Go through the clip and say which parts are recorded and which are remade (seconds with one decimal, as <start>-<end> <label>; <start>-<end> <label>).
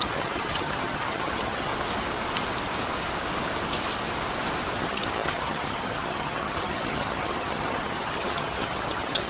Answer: 0.0-1.7 remade; 1.7-4.8 recorded; 4.8-9.3 remade